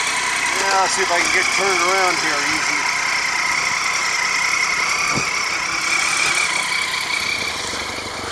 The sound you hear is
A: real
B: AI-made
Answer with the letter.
A